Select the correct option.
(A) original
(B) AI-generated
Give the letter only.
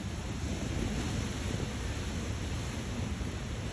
A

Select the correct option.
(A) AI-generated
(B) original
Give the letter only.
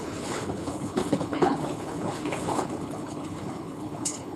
A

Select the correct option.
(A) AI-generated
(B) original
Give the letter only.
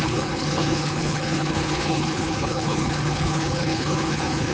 A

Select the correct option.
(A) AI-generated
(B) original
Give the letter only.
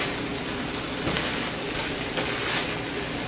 B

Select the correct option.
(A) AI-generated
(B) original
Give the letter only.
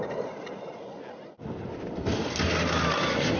B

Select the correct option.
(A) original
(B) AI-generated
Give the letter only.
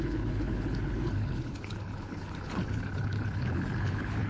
B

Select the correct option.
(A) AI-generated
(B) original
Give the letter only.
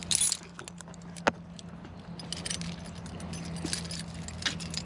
B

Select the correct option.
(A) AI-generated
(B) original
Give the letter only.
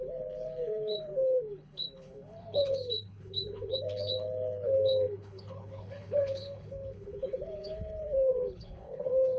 A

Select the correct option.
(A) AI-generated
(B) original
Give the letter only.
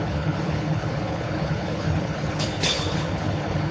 A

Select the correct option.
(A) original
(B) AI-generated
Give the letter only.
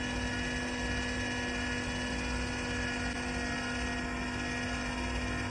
A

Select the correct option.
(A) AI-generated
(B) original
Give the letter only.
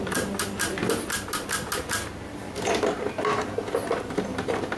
B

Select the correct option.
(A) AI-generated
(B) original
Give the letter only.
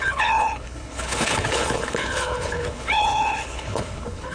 A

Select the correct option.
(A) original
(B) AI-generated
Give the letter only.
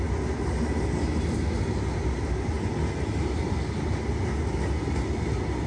A